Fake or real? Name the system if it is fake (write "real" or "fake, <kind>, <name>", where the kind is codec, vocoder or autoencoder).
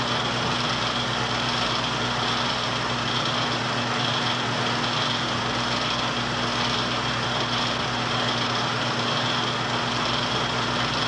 real